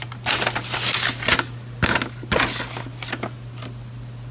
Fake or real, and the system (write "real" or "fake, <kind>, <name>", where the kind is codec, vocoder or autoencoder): real